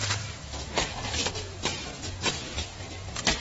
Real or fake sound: real